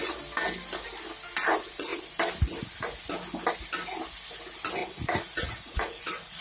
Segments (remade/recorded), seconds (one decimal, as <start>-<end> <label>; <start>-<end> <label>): 0.0-4.8 recorded; 4.8-6.4 remade